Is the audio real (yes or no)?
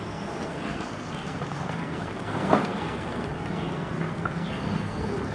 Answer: no